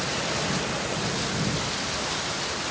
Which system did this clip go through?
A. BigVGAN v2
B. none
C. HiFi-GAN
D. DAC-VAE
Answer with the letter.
B